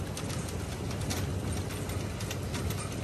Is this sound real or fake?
real